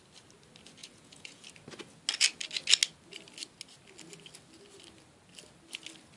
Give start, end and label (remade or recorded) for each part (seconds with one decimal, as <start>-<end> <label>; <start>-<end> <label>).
0.0-0.8 recorded; 0.8-1.4 remade; 1.4-6.2 recorded